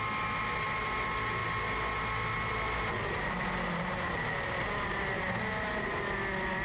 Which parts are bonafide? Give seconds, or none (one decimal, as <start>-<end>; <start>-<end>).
0.0-6.6